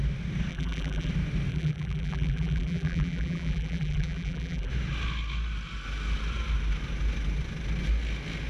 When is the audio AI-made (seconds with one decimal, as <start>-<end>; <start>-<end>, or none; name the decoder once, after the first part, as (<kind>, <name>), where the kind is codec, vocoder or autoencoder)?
0.5-1.1 (vocoder, BigVGAN v2); 1.5-4.7